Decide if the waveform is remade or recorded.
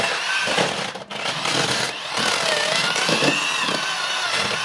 recorded